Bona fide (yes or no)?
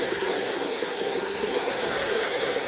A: no